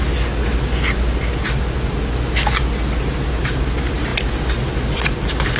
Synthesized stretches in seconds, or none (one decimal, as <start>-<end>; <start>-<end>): none